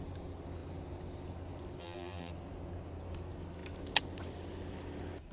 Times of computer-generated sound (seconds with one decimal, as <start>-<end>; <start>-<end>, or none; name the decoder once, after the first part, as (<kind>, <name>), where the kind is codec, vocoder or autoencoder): 1.8-2.3 (vocoder, BigVGAN v2)